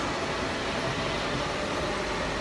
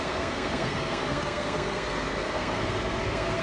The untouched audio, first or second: first